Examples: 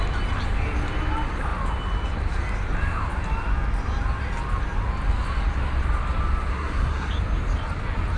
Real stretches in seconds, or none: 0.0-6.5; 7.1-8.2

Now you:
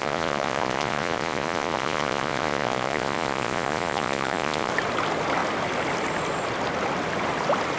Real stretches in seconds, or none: 4.7-7.8

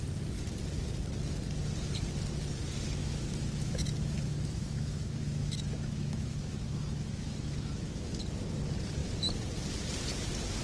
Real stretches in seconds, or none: 0.0-3.0; 8.2-10.6

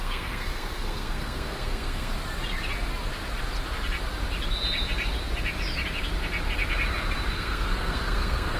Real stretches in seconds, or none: 2.1-7.3

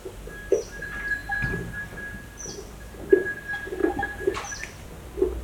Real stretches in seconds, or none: 0.0-1.2; 1.9-3.8; 4.4-5.4